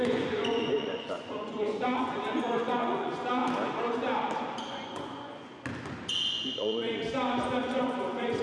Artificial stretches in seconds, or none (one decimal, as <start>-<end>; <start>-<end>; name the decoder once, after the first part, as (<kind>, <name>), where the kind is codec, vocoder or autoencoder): 0.0-3.4 (vocoder, Vocos); 4.6-5.5; 6.1-7.0; 7.6-8.4